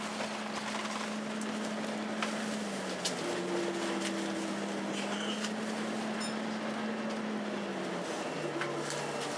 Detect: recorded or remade recorded